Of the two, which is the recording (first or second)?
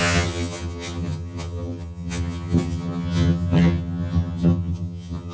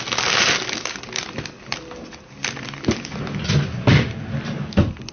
second